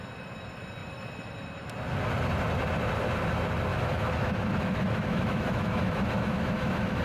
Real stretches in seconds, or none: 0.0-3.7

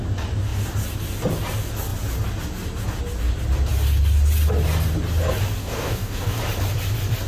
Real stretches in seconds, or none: 0.0-5.6; 6.4-7.3

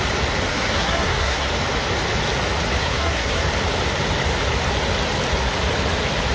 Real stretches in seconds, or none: 0.0-0.5; 1.5-2.8; 3.4-6.3